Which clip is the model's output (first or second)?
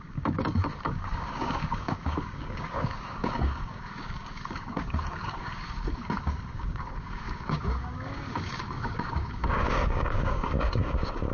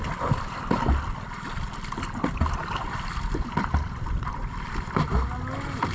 first